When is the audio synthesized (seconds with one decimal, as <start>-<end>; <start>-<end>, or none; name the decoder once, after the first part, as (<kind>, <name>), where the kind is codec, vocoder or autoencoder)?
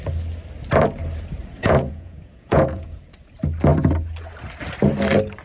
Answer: 1.6-3.0 (vocoder, Vocos)